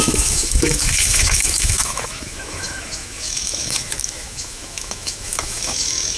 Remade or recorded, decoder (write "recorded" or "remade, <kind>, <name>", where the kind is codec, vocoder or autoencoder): remade, autoencoder, DAC-VAE